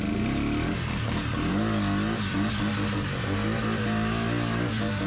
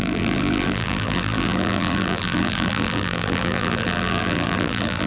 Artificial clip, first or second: second